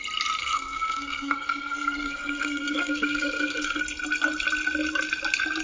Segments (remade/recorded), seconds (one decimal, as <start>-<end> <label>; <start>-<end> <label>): 0.0-0.4 recorded; 0.4-3.8 remade; 3.8-5.6 recorded